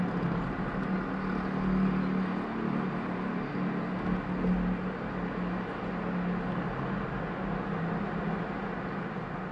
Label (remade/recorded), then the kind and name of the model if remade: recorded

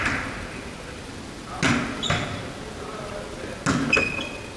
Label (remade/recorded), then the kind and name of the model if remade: recorded